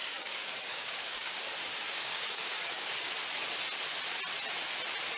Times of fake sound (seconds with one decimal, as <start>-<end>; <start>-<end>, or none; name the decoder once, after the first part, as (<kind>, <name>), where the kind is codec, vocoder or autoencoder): 0.0-1.4 (codec, DAC); 1.9-2.9